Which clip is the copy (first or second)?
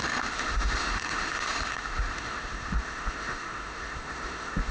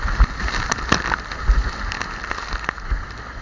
first